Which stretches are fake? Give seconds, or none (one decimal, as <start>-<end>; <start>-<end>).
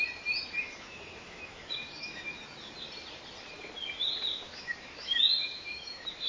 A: 0.6-2.4; 4.3-6.3